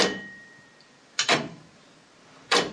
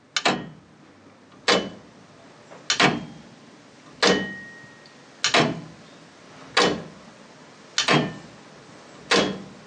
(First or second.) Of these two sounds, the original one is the second